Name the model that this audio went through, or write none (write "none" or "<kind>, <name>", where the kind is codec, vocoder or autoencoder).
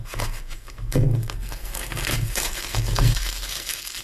codec, SNAC